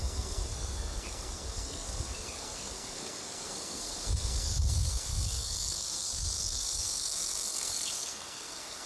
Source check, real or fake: fake